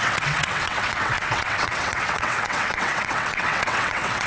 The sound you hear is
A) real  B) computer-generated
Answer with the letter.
B